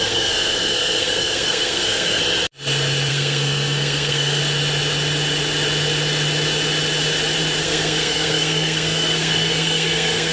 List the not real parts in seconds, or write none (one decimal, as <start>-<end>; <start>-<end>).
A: 0.0-2.2; 3.1-4.4; 7.6-10.3